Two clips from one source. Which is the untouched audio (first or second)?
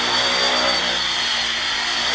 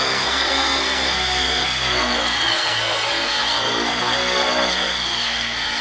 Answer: first